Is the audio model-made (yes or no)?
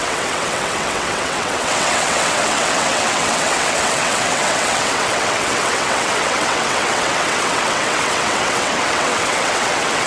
yes